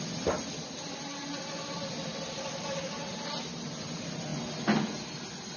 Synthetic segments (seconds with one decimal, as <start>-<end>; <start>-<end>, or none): none